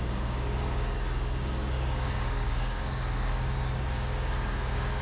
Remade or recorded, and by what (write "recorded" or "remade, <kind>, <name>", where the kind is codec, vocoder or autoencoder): remade, codec, DAC